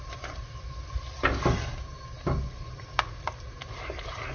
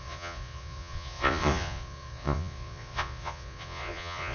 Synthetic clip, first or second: second